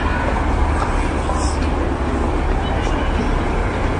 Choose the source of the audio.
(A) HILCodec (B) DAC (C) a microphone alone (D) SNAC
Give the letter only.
C